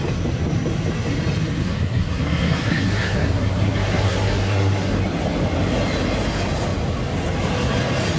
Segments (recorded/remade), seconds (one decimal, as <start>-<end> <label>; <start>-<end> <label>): 0.0-1.6 recorded; 1.6-4.9 remade; 4.9-8.2 recorded